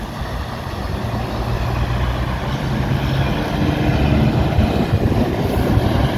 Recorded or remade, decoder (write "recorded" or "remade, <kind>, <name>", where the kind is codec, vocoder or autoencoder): recorded